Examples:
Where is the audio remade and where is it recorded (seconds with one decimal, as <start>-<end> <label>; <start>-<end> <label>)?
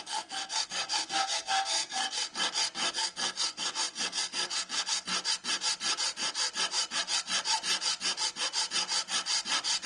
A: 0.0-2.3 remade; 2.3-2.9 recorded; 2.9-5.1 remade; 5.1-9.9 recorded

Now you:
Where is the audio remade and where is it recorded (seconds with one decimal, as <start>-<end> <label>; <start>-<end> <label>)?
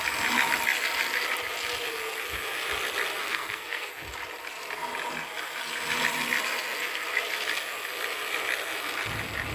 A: 0.0-3.2 recorded; 3.2-3.9 remade; 3.9-9.5 recorded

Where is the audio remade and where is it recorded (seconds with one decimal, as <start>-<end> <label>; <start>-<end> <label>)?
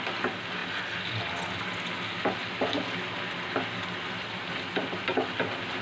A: 0.0-5.8 recorded